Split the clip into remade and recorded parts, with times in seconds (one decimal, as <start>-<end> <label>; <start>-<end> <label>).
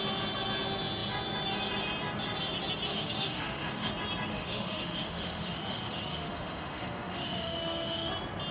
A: 0.0-2.9 recorded; 2.9-3.9 remade; 3.9-4.3 recorded; 4.3-8.1 remade; 8.1-8.5 recorded